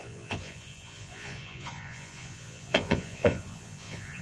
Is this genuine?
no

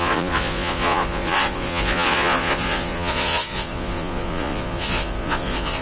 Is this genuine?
no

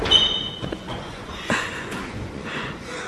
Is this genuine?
no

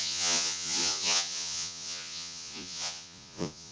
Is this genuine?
no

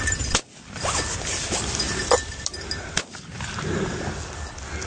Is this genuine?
yes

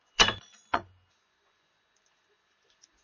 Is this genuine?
no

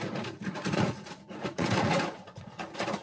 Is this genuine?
no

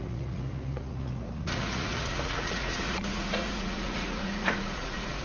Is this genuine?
no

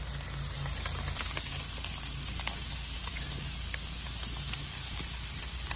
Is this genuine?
yes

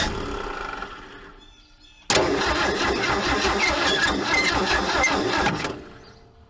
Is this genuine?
yes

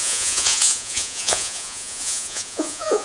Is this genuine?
no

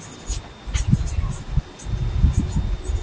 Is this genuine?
yes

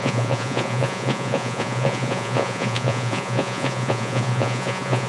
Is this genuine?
no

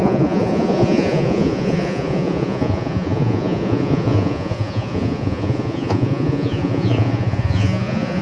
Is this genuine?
no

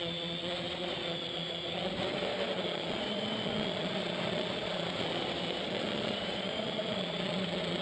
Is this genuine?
no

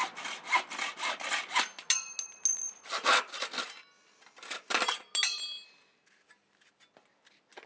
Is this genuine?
yes